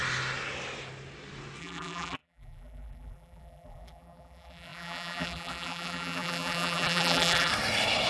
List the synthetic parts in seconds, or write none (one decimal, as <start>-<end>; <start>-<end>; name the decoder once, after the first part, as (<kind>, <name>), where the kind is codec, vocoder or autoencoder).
1.6-7.5 (vocoder, BigVGAN v2)